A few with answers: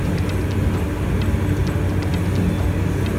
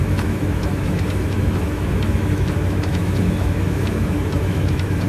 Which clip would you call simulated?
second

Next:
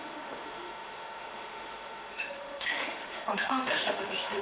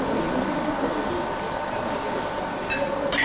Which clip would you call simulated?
first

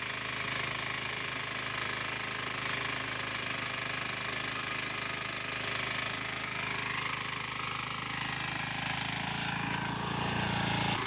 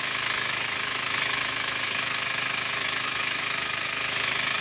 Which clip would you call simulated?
second